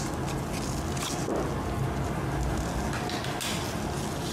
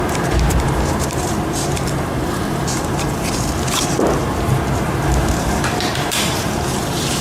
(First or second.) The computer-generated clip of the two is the second